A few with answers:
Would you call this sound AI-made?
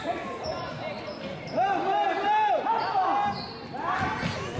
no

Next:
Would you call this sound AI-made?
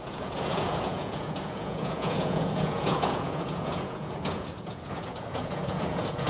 yes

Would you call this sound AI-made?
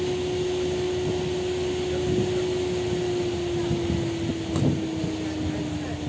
no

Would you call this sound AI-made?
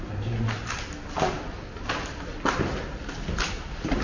no